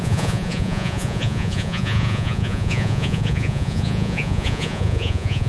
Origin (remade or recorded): remade